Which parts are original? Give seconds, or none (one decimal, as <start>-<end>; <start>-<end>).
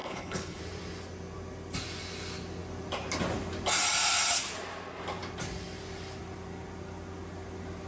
0.6-7.9